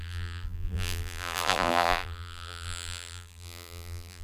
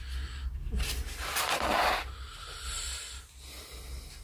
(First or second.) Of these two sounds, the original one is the second